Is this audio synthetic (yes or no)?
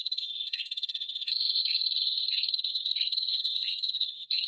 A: yes